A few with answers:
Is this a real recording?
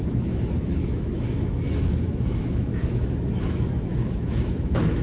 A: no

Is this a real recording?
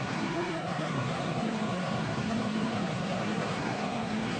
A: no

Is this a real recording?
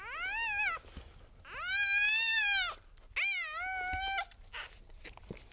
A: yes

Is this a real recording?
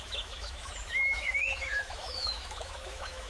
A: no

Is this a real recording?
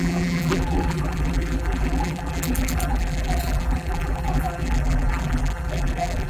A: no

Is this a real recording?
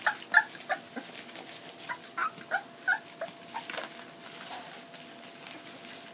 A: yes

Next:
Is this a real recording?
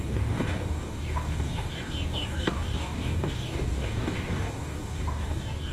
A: no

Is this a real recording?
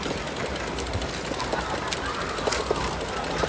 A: yes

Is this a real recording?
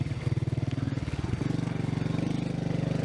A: yes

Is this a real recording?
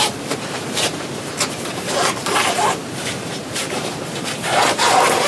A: no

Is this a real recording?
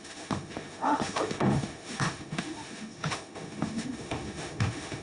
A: no